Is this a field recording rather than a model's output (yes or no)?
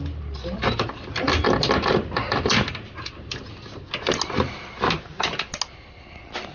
yes